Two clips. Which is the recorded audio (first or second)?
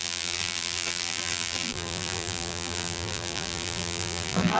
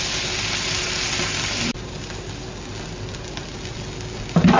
second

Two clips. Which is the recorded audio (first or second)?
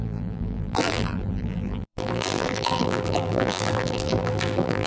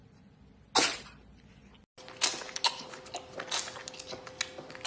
second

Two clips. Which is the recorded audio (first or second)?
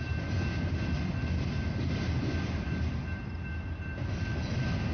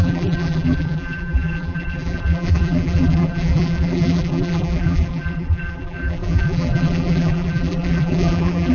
first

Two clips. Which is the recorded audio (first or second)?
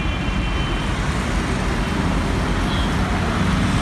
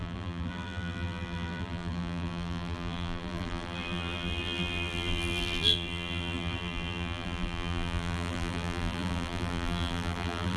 first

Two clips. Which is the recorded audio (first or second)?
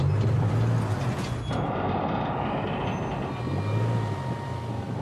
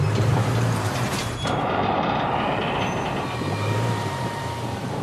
first